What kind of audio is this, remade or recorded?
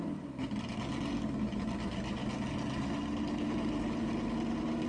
recorded